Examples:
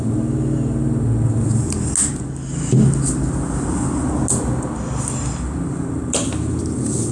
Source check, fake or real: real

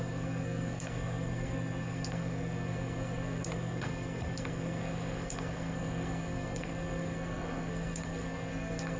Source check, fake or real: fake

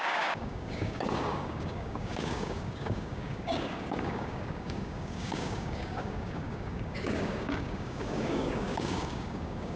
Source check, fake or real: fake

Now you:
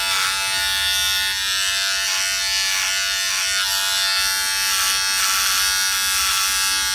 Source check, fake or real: real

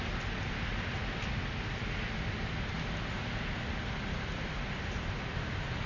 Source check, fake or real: real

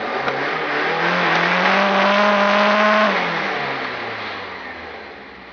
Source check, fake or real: real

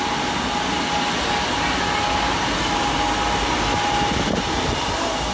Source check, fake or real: real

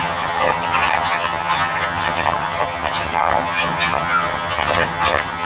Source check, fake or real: fake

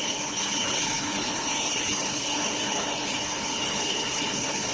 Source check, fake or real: fake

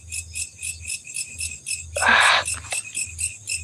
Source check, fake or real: real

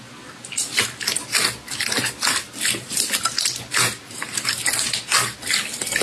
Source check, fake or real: real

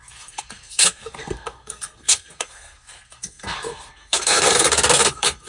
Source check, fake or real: fake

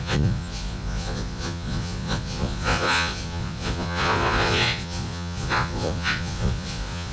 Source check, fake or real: fake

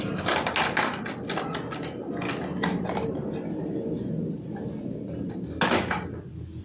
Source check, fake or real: real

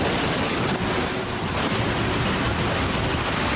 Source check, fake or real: real